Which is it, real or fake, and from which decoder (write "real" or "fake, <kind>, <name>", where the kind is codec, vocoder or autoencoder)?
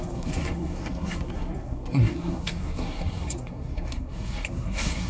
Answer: fake, codec, SNAC